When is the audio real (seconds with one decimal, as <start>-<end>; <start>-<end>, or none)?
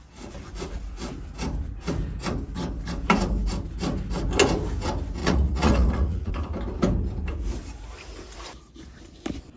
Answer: 0.0-5.2; 6.3-9.6